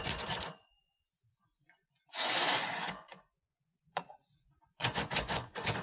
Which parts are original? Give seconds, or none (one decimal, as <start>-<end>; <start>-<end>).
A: none